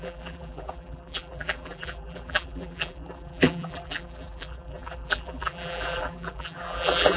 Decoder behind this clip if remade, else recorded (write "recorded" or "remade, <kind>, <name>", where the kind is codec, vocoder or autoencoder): remade, vocoder, BigVGAN v2